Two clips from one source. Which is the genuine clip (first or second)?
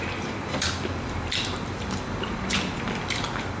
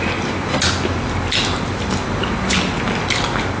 second